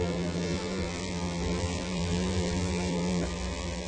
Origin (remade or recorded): remade